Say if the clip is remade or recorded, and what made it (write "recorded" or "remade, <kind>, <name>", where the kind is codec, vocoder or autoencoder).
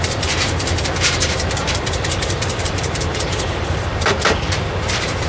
remade, vocoder, BigVGAN v2